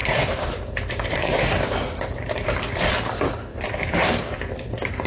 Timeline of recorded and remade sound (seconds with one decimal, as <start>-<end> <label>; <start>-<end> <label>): 0.0-2.9 remade; 2.9-3.5 recorded; 3.5-5.1 remade